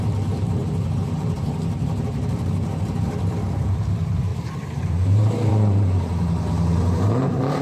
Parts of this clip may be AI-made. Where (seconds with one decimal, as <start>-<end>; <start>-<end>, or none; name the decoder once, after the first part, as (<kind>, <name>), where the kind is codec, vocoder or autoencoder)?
0.0-7.6 (vocoder, BigVGAN v2)